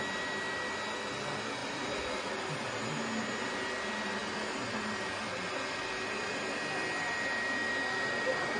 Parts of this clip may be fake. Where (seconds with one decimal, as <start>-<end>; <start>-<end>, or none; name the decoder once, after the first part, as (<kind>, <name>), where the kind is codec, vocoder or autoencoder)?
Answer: 1.6-2.3 (vocoder, BigVGAN v2)